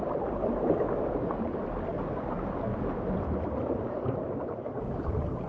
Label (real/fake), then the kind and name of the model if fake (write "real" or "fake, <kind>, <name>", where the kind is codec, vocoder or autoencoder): real